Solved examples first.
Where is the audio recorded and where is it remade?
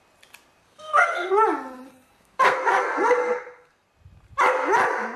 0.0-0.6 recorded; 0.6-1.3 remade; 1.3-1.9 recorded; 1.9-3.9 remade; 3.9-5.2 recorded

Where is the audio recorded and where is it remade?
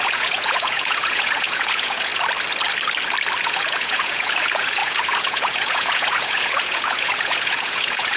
0.0-2.1 remade; 2.1-3.4 recorded; 3.4-8.2 remade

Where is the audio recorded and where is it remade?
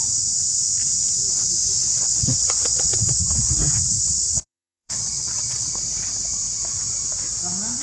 0.0-1.8 recorded; 1.8-5.7 remade; 5.7-7.8 recorded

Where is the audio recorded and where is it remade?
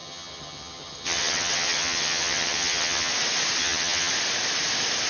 0.0-3.1 remade; 3.1-3.6 recorded; 3.6-4.1 remade; 4.1-5.1 recorded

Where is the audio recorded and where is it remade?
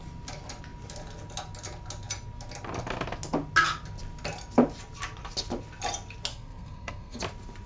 0.0-6.3 recorded; 6.3-7.2 remade; 7.2-7.7 recorded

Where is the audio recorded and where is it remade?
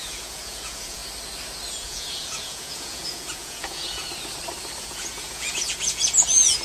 0.0-1.0 remade; 1.0-1.7 recorded; 1.7-4.1 remade; 4.1-4.8 recorded; 4.8-6.6 remade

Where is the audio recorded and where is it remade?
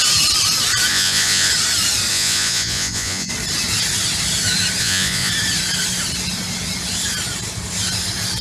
0.0-0.9 recorded; 0.9-1.5 remade; 1.5-2.1 recorded; 2.1-3.3 remade; 3.3-4.8 recorded; 4.8-5.3 remade; 5.3-8.4 recorded